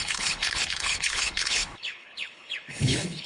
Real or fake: fake